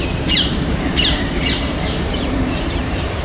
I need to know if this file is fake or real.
fake